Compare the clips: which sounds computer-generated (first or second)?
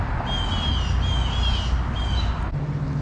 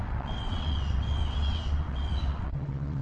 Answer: second